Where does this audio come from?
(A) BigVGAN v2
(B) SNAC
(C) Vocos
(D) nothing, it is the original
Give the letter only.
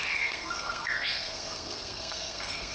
B